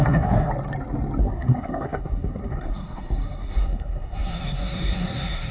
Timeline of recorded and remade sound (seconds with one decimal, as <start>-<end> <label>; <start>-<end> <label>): 0.0-0.5 remade; 0.5-1.2 recorded; 1.2-5.5 remade